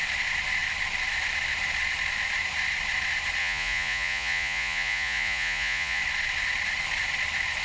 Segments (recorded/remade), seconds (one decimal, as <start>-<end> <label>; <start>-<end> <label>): 0.0-3.4 recorded; 3.4-6.0 remade; 6.0-7.6 recorded